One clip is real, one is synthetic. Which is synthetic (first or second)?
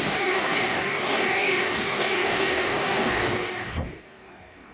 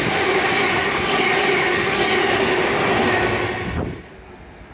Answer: first